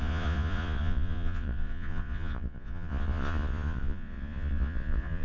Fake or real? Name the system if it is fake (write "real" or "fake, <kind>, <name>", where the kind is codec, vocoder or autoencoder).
fake, vocoder, Vocos